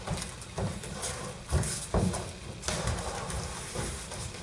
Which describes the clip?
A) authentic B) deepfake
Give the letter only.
A